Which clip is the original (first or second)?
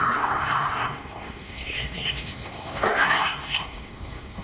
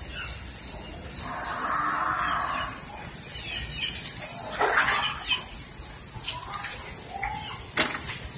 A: second